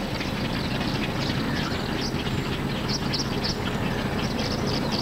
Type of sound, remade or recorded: recorded